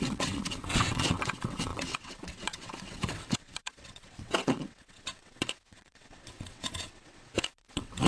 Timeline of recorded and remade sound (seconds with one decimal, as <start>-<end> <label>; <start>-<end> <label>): 0.0-8.1 remade